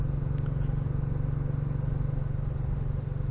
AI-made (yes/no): no